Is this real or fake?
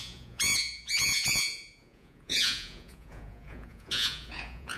fake